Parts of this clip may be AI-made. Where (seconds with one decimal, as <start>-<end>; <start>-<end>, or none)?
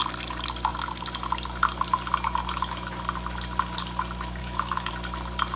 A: 4.4-4.9